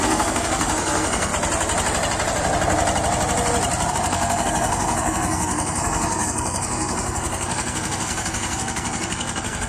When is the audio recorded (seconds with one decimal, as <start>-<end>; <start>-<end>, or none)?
1.3-3.9